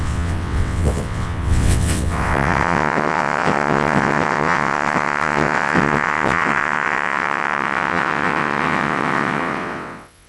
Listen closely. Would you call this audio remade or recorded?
remade